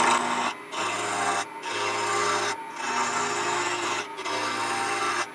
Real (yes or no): yes